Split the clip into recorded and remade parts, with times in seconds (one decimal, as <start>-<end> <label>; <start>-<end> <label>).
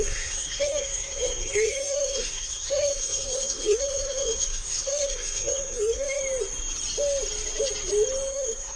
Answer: 0.0-6.2 remade; 6.2-8.3 recorded; 8.3-8.8 remade